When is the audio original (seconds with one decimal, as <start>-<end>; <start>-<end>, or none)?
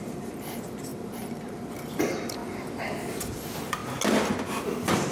2.4-3.1; 3.8-4.5